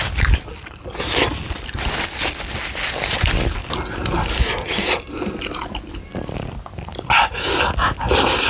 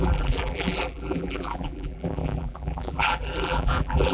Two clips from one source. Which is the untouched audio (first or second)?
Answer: first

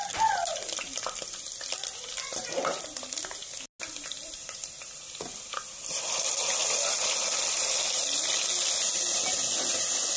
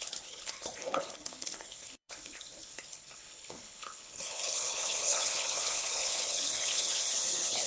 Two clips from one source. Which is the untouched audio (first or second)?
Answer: first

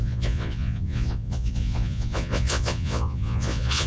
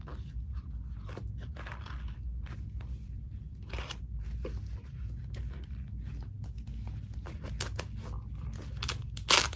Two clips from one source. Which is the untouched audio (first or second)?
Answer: second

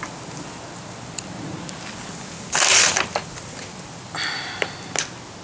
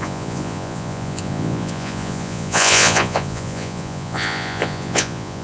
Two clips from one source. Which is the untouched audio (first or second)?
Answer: first